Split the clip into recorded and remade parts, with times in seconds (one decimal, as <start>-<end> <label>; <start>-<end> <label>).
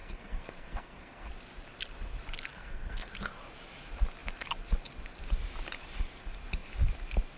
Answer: 0.0-1.3 remade; 1.3-2.5 recorded; 2.5-3.1 remade; 3.1-7.4 recorded